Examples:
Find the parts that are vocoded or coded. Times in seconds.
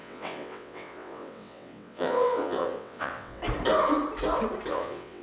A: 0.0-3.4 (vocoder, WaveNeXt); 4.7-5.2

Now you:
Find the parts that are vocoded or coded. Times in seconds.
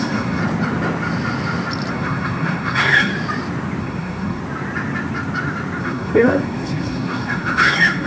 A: 0.0-0.4 (codec, SNAC); 1.9-3.1; 3.8-4.4; 5.8-8.1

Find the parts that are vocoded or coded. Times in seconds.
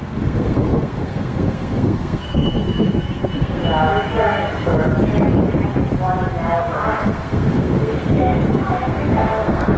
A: 0.0-3.6 (codec, SNAC); 4.1-4.7; 6.6-9.8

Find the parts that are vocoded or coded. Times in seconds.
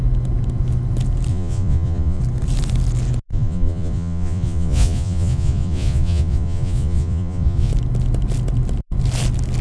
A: 1.3-2.2 (vocoder, Vocos); 3.3-7.7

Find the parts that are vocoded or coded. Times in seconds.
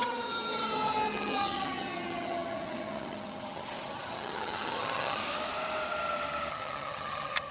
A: 0.0-5.2 (vocoder, HiFi-GAN); 6.5-7.5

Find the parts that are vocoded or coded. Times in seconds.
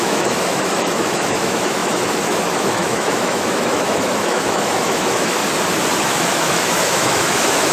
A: 0.0-5.4 (autoencoder, DAC-VAE); 6.0-7.7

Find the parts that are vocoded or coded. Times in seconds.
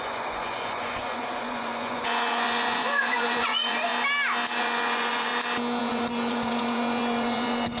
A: 0.0-3.9 (vocoder, Vocos); 4.6-5.3; 5.8-7.8